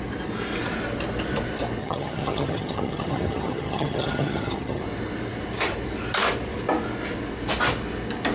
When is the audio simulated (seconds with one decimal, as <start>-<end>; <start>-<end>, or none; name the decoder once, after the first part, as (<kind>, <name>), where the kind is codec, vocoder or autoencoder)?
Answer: 1.8-4.8 (vocoder, HiFi-GAN)